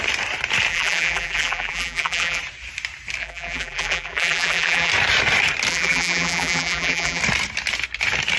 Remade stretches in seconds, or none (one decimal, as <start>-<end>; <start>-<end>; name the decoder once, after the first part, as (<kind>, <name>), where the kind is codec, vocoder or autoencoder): 0.7-2.4 (vocoder, BigVGAN v2); 3.2-4.9; 5.7-7.2